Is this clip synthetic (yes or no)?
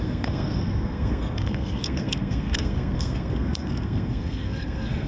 yes